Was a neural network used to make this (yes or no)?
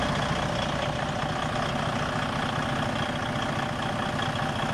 no